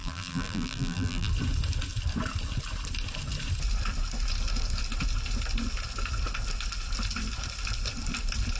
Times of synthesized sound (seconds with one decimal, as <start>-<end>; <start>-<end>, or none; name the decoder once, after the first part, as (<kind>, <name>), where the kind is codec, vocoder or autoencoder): 0.0-1.3 (vocoder, BigVGAN v2)

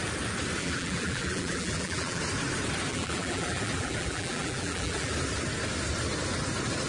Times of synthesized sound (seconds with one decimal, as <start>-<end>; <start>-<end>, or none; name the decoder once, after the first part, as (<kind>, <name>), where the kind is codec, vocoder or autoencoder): 0.6-2.2 (vocoder, BigVGAN v2); 2.9-5.1

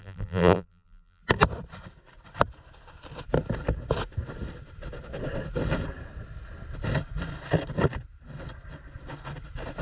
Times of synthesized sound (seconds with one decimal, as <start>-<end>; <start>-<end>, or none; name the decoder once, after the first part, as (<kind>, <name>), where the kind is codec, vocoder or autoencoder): 0.0-1.2 (vocoder, BigVGAN v2)

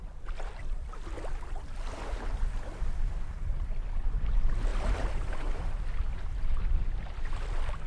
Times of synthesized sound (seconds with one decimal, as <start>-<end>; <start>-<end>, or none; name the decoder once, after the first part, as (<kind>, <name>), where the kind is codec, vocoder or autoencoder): 0.0-7.9 (vocoder, BigVGAN v2)

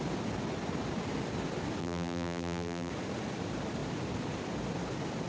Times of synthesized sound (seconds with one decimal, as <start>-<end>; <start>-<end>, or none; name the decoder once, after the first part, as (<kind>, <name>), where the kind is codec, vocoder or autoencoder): 1.8-2.9 (vocoder, BigVGAN v2)

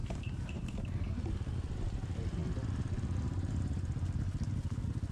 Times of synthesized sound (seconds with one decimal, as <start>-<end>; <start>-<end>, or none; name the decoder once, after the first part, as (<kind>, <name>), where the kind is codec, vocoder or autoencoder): 0.0-0.8 (vocoder, BigVGAN v2)